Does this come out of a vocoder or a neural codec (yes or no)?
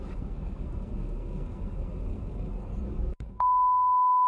yes